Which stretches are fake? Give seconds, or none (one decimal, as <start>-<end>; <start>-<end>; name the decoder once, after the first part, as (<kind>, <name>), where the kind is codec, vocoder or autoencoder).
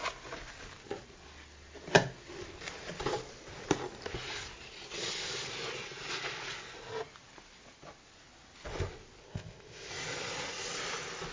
9.2-9.9 (codec, ZipCodec)